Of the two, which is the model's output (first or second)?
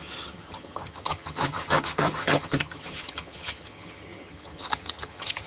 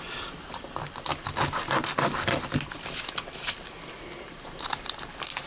first